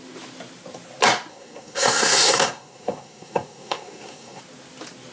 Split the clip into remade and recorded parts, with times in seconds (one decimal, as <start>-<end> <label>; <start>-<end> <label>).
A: 0.0-1.3 recorded; 1.3-4.4 remade; 4.4-5.1 recorded